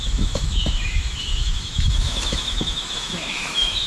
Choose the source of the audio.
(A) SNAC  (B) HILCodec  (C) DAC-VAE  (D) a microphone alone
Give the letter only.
C